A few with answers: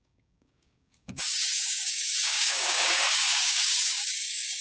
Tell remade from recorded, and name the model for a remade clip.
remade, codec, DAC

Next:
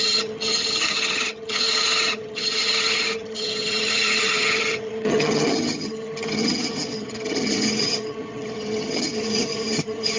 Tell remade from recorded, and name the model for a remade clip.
remade, vocoder, HiFi-GAN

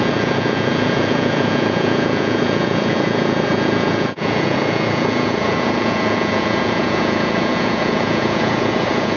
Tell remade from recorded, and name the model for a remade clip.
remade, vocoder, Vocos